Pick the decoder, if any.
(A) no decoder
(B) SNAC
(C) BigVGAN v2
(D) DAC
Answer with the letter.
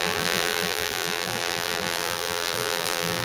C